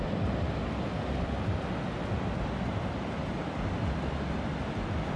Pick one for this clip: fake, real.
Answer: real